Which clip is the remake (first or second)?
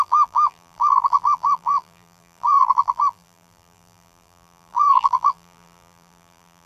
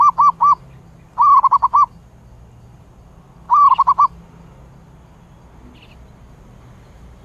first